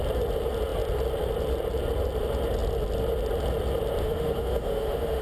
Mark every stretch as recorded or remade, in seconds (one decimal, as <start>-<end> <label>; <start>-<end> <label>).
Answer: 0.0-4.0 recorded; 4.0-5.2 remade